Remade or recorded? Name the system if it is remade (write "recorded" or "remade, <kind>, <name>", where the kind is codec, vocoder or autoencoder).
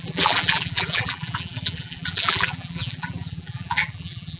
remade, vocoder, BigVGAN v2